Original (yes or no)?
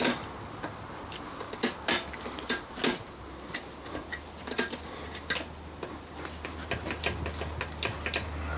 yes